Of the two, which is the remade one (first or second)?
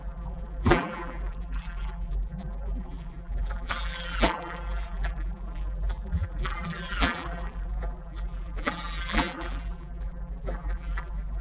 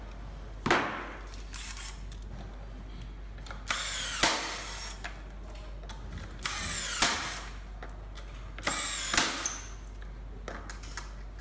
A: first